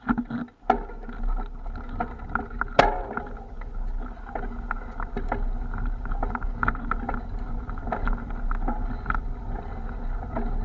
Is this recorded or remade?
recorded